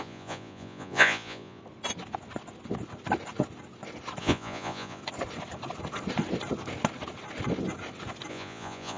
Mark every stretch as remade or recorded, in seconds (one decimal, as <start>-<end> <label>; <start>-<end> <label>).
0.0-1.6 remade; 1.6-4.2 recorded; 4.2-5.0 remade; 5.0-8.3 recorded; 8.3-9.0 remade